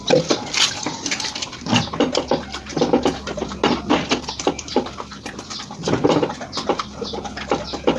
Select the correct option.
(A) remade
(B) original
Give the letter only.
B